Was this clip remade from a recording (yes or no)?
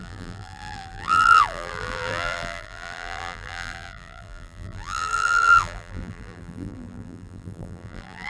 yes